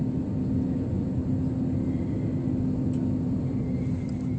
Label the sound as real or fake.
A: real